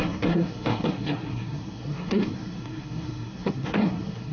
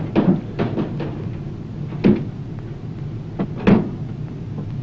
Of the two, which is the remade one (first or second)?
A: first